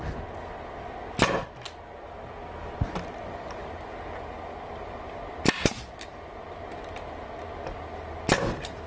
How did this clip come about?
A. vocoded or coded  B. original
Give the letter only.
B